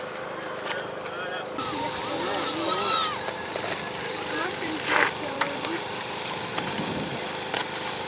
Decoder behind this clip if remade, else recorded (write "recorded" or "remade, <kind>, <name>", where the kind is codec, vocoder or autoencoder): remade, vocoder, BigVGAN v2